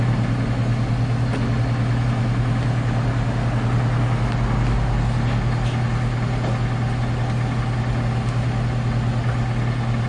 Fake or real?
real